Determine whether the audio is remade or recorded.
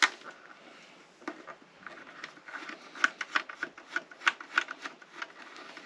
recorded